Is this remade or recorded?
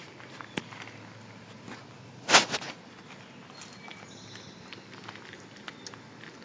recorded